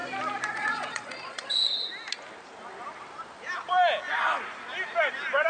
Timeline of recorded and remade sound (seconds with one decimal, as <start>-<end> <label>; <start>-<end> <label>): 0.0-0.5 recorded; 0.5-1.9 remade; 1.9-5.5 recorded

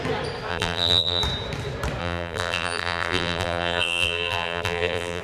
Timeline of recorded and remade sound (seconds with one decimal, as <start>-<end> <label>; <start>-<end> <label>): 0.0-0.5 recorded; 0.5-1.2 remade; 1.2-2.0 recorded; 2.0-5.2 remade

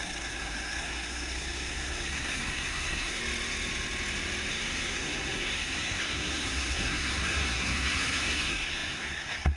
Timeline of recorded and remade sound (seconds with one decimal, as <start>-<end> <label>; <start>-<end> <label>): 0.0-3.2 remade; 3.2-4.5 recorded; 4.5-9.6 remade

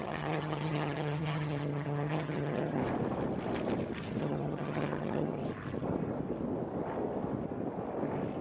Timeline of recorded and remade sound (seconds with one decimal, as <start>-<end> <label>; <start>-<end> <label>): 0.0-2.8 remade; 2.8-4.2 recorded; 4.2-5.4 remade; 5.4-8.4 recorded

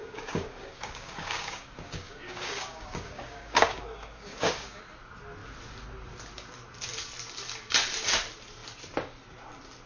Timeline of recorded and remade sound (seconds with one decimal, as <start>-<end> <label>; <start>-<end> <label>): 0.0-4.8 remade; 4.8-9.9 recorded

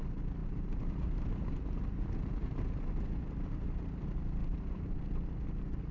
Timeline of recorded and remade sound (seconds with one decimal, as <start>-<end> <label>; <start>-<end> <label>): 0.0-0.4 recorded; 0.4-2.7 remade; 2.7-4.4 recorded; 4.4-5.0 remade; 5.0-5.9 recorded

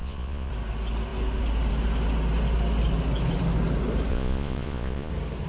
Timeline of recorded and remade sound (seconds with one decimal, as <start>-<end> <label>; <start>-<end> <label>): 0.0-0.5 remade; 0.5-4.1 recorded; 4.1-5.1 remade; 5.1-5.5 recorded